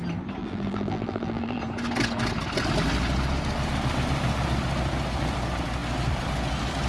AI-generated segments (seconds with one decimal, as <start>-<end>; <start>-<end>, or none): 0.4-1.6